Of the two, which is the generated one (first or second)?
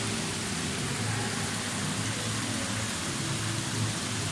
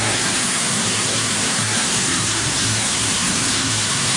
second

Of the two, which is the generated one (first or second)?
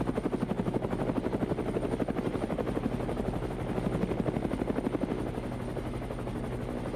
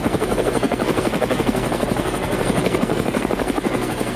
second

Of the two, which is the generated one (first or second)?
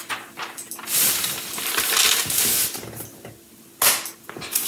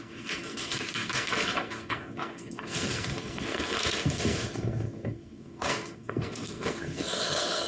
second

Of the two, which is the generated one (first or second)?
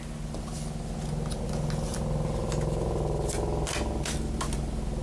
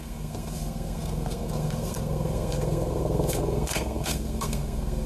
second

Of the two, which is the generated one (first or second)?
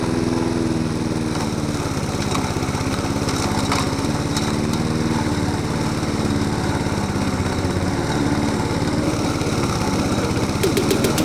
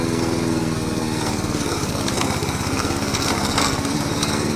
second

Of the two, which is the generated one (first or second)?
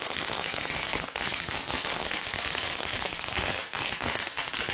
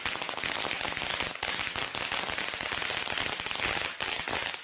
first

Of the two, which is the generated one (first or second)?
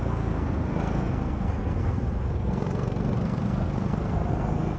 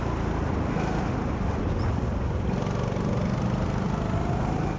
first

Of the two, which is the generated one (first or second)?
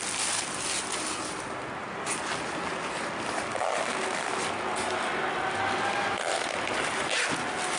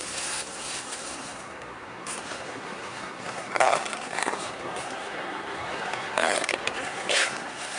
second